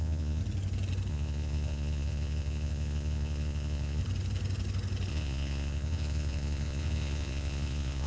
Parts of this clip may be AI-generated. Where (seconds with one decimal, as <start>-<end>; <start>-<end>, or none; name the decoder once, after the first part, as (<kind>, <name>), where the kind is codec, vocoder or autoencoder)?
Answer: 0.0-0.4 (vocoder, Vocos); 1.1-4.0; 5.1-8.1